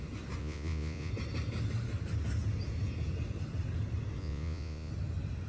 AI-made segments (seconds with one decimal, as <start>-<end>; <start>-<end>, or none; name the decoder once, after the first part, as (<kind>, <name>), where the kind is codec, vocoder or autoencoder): 0.4-1.1 (vocoder, Vocos); 4.2-4.9